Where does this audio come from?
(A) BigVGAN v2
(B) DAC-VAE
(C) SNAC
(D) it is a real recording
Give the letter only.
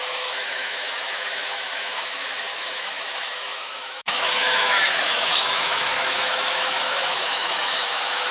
B